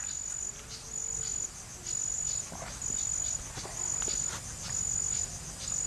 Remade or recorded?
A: recorded